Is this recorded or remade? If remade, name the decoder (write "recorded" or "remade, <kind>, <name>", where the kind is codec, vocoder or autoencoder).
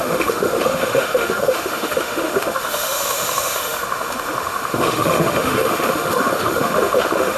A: remade, autoencoder, DAC-VAE